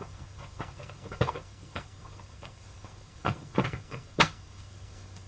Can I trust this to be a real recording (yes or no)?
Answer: no